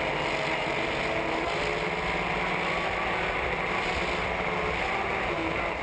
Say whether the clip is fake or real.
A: real